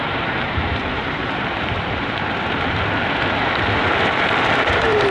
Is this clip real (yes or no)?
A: no